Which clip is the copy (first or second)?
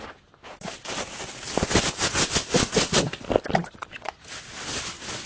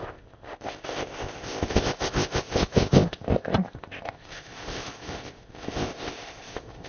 second